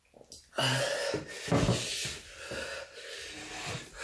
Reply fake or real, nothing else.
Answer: real